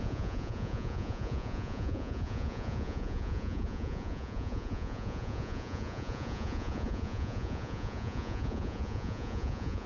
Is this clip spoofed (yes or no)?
yes